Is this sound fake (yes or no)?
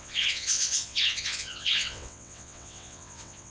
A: yes